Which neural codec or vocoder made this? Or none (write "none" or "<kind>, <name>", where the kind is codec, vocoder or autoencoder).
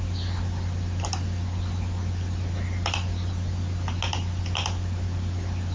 none